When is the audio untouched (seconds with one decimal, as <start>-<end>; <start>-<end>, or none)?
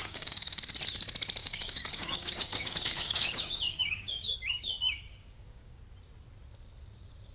0.6-1.4; 5.8-7.3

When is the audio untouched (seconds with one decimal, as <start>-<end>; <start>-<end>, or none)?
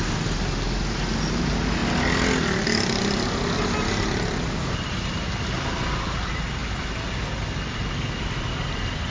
0.0-9.1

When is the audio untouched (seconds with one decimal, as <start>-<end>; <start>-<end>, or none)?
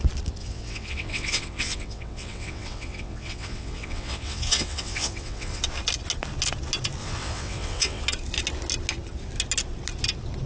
0.0-0.4; 5.6-7.0; 8.0-10.5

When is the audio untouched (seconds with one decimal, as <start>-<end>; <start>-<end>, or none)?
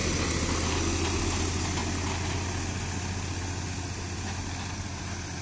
0.0-5.4